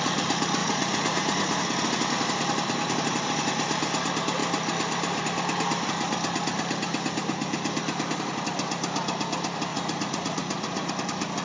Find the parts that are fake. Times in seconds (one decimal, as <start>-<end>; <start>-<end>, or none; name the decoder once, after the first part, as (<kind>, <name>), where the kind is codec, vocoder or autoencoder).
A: 0.6-1.6 (vocoder, Vocos); 9.7-10.9